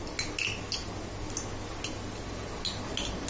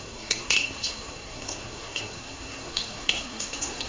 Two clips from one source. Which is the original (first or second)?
first